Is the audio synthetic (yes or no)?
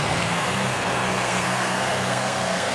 yes